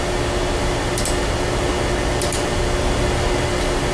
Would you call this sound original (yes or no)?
yes